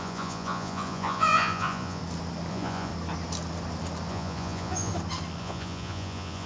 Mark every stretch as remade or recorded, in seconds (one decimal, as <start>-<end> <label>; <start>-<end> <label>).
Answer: 0.0-2.0 remade; 2.0-2.5 recorded; 2.5-2.9 remade; 2.9-4.1 recorded; 4.1-4.9 remade; 4.9-5.4 recorded; 5.4-6.5 remade